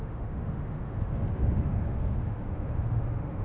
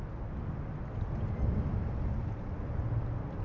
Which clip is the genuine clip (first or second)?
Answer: second